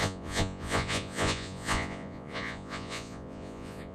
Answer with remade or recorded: remade